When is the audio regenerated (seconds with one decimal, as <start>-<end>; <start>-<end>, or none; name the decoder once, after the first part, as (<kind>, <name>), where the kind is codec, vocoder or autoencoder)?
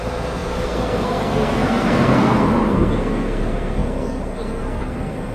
0.0-5.3 (codec, SNAC)